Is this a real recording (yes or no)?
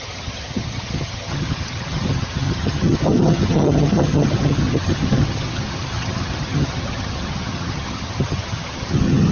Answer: no